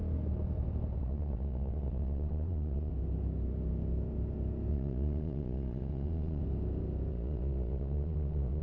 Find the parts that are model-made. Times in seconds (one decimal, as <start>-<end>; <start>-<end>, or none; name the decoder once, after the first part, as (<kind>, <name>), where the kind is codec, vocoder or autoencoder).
1.0-2.9 (vocoder, Vocos); 4.7-6.4; 7.1-8.6